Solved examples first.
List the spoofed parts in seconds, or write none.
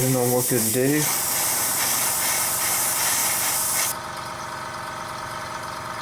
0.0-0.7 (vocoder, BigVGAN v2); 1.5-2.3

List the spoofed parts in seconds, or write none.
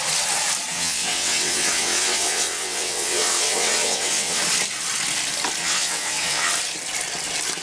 0.7-4.4 (vocoder, WaveNeXt); 5.6-6.5